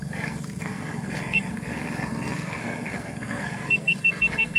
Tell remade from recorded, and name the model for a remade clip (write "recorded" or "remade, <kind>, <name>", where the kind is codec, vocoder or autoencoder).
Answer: remade, codec, SNAC